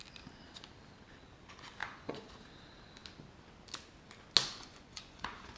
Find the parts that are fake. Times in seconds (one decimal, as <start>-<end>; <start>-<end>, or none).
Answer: 1.8-2.3; 4.4-5.6